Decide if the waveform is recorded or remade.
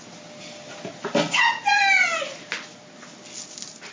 recorded